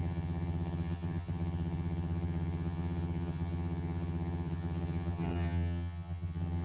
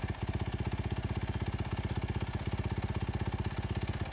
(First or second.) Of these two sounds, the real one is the second